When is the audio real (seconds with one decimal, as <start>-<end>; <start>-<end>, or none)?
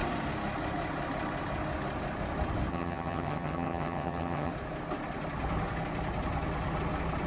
0.0-2.7; 4.5-7.3